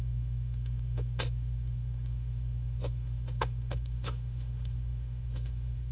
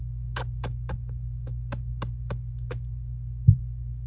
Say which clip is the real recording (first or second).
second